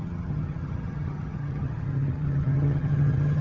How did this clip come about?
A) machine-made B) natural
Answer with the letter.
A